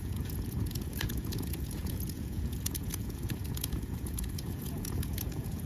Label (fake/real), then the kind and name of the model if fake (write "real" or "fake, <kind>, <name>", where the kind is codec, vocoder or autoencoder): fake, vocoder, Vocos